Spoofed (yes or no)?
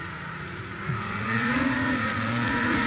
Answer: yes